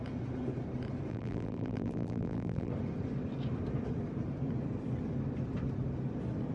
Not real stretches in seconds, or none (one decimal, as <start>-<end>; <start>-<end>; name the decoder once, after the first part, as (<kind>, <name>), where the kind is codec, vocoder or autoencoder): 1.1-2.7 (vocoder, BigVGAN v2)